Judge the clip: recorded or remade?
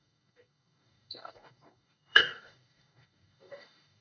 remade